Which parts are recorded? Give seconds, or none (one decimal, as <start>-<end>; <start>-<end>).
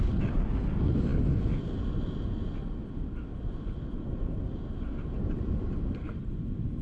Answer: 0.0-6.8